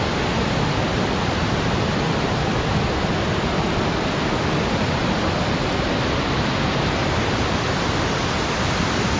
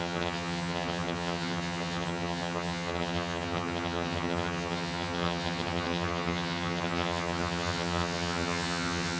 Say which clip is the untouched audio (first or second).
first